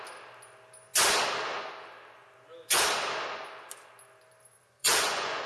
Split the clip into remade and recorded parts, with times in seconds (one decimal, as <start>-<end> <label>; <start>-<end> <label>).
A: 0.0-4.8 recorded; 4.8-5.5 remade